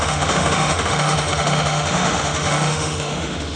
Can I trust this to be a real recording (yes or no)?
no